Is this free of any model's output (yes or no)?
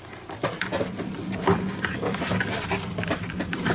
no